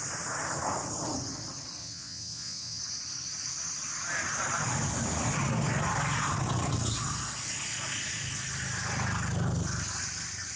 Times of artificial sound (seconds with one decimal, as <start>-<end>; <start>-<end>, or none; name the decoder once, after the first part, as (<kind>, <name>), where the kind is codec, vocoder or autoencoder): 1.8-2.8 (vocoder, WaveNeXt)

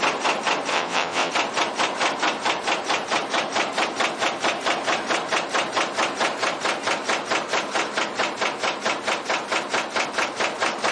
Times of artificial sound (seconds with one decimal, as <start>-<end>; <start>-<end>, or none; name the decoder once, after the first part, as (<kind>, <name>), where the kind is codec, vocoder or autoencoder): 0.7-1.3 (vocoder, WaveNeXt)

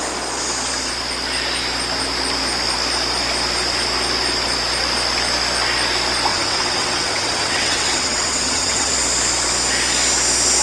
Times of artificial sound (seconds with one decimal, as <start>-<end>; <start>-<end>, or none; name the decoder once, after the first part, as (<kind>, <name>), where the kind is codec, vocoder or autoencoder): 6.3-8.9 (vocoder, WaveNeXt)

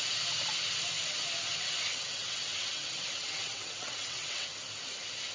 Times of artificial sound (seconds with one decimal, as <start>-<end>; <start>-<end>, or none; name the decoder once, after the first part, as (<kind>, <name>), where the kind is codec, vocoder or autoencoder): 1.9-4.5 (vocoder, WaveNeXt)

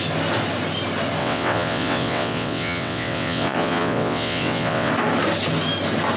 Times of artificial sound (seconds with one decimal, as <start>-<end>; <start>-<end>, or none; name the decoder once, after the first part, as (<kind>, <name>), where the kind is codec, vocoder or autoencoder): 1.2-4.9 (vocoder, WaveNeXt)

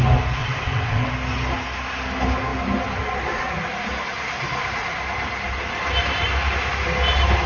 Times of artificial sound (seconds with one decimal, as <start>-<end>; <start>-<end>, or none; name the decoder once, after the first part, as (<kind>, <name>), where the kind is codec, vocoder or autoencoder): 0.4-1.1 (vocoder, WaveNeXt)

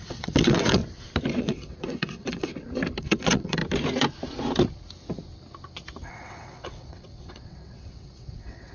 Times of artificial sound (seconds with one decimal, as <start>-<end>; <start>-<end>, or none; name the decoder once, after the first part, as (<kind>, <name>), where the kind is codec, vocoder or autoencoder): 0.0-0.8 (vocoder, WaveNeXt); 1.4-2.5; 3.0-3.6; 6.1-8.7

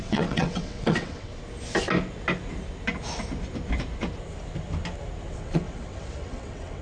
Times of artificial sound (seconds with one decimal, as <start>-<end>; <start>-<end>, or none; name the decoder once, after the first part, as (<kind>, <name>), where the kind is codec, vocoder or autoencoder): 0.0-1.3 (vocoder, WaveNeXt); 5.3-6.8